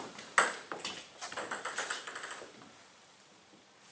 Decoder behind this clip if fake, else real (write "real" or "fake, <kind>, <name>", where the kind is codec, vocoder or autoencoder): real